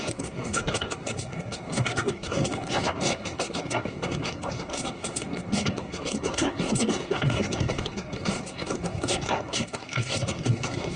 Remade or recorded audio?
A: remade